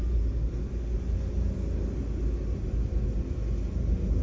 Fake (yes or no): no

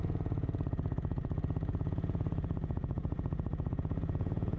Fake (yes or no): yes